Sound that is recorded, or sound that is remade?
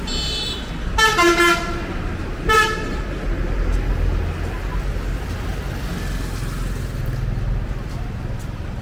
recorded